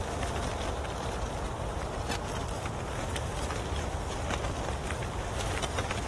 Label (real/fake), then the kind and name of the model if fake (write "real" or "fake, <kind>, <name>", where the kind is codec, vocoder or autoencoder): fake, vocoder, BigVGAN v2